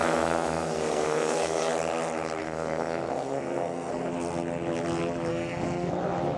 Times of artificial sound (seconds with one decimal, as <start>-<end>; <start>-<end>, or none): 0.0-1.7; 2.4-4.1; 5.3-5.9